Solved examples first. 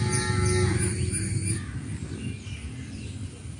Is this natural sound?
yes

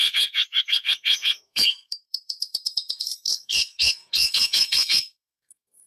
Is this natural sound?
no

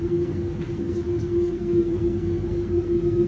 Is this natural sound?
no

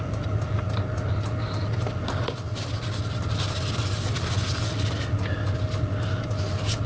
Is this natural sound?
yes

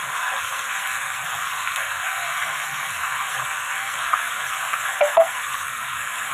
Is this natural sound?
no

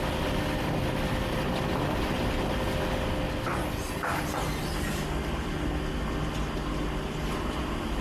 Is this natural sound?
yes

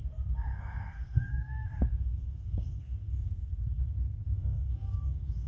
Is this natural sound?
no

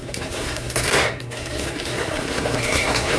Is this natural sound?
no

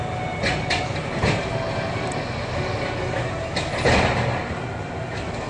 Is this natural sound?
yes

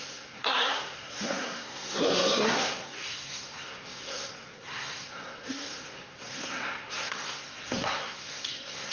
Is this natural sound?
no